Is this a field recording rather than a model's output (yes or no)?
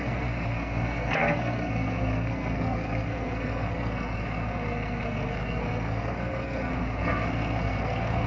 no